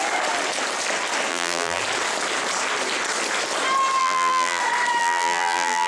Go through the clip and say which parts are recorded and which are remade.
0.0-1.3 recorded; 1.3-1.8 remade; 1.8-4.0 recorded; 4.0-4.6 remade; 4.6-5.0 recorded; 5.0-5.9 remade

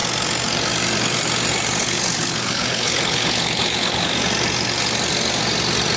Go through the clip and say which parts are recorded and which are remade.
0.0-1.8 recorded; 1.8-4.1 remade; 4.1-6.0 recorded

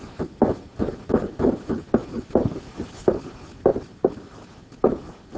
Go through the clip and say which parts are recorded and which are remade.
0.0-2.0 recorded; 2.0-3.0 remade; 3.0-3.7 recorded; 3.7-5.4 remade

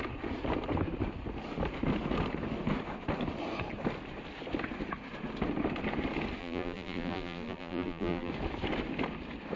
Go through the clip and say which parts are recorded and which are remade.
0.0-6.4 recorded; 6.4-8.3 remade; 8.3-9.6 recorded

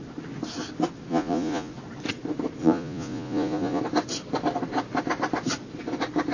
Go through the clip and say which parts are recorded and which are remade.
0.0-1.1 recorded; 1.1-1.7 remade; 1.7-2.6 recorded; 2.6-3.8 remade; 3.8-6.3 recorded

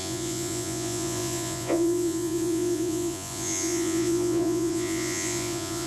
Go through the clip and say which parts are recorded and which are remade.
0.0-5.9 remade

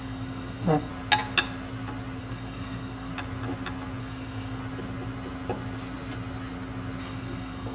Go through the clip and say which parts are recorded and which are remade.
0.0-0.9 remade; 0.9-2.2 recorded; 2.2-3.1 remade; 3.1-4.0 recorded; 4.0-4.6 remade; 4.6-7.0 recorded; 7.0-7.7 remade

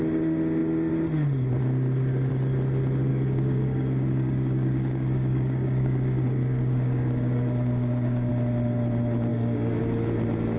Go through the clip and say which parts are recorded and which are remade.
0.0-3.1 recorded; 3.1-8.3 remade; 8.3-9.3 recorded; 9.3-9.8 remade; 9.8-10.6 recorded